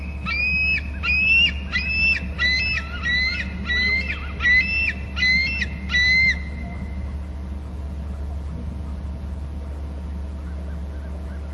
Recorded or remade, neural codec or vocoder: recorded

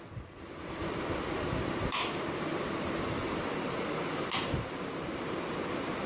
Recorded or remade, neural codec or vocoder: recorded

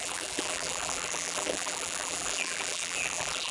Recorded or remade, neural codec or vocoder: remade, vocoder, BigVGAN v2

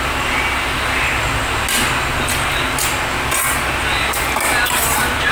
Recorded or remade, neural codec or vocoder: recorded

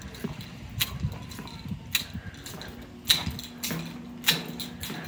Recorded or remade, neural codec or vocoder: recorded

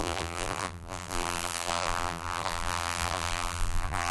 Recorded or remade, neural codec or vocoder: remade, vocoder, BigVGAN v2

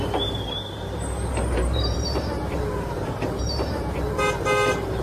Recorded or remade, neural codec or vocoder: remade, vocoder, BigVGAN v2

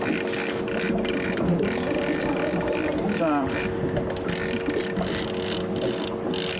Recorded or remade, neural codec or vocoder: recorded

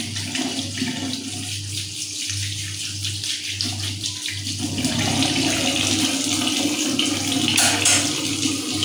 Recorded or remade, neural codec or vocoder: recorded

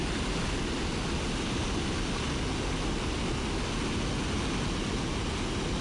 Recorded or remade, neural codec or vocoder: recorded